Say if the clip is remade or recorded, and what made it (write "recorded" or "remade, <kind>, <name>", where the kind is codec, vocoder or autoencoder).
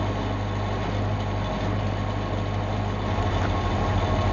recorded